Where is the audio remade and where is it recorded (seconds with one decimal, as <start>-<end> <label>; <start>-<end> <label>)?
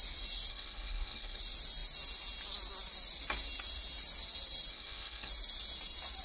0.0-0.5 recorded; 0.5-1.4 remade; 1.4-4.7 recorded; 4.7-5.3 remade; 5.3-6.2 recorded